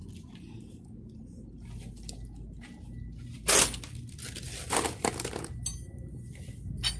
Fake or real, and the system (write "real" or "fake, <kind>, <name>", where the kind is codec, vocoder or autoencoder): real